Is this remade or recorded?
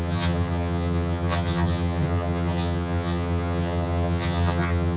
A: remade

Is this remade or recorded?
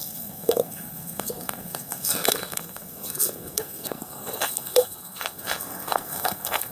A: remade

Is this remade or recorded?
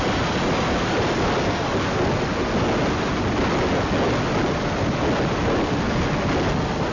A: recorded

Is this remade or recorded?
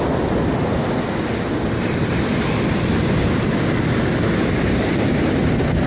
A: recorded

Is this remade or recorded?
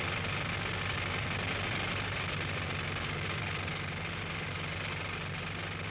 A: recorded